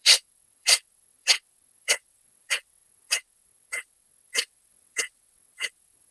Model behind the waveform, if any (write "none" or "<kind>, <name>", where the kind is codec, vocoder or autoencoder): vocoder, WaveNeXt